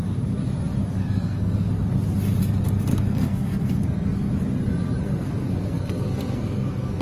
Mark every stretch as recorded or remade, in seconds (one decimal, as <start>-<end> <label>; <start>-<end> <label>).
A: 0.0-1.0 recorded; 1.0-1.7 remade; 1.7-2.9 recorded; 2.9-4.3 remade; 4.3-5.0 recorded; 5.0-7.0 remade